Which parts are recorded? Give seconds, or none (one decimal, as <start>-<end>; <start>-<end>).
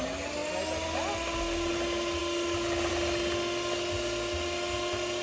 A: 0.0-5.2